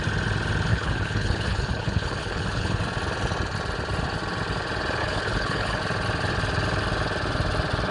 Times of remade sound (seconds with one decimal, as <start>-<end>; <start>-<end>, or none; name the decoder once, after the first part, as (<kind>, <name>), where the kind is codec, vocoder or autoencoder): 0.7-2.8 (codec, HILCodec); 5.0-5.8

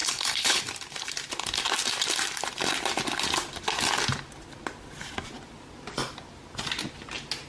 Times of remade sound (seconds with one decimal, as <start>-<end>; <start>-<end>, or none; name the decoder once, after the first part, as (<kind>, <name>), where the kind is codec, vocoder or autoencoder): 0.0-0.6 (codec, HILCodec)